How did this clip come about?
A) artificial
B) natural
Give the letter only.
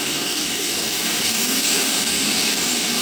A